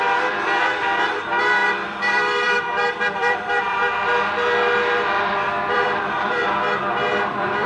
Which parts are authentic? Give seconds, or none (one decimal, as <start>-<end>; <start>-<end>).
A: 3.8-5.2